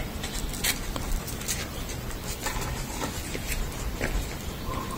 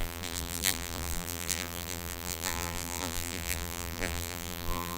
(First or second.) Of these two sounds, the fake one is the second